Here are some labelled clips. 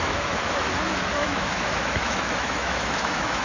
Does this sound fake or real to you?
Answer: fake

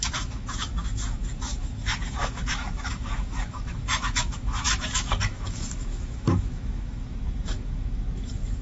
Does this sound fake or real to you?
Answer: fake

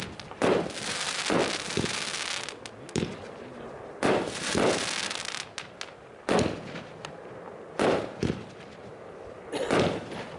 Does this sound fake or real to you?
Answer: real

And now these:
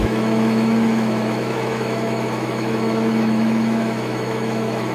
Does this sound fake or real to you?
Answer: fake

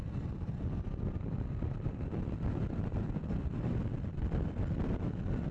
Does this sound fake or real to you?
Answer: real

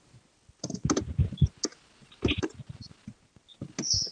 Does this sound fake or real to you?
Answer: real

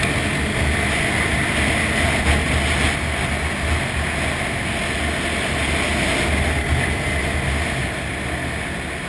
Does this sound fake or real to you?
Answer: real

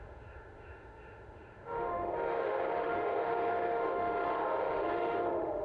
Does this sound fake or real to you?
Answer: fake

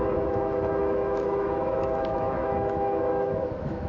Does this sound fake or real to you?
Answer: fake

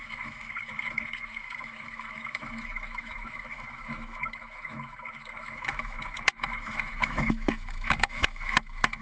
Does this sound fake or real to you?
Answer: fake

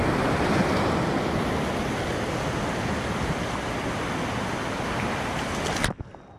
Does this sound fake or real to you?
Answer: real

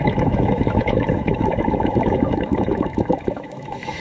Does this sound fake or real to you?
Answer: fake